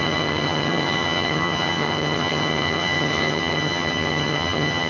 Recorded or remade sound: remade